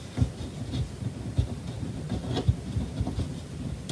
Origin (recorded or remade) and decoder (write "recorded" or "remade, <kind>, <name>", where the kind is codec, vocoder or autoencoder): recorded